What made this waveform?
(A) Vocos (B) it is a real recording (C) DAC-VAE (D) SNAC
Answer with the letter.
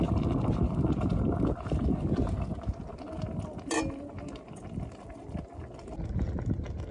B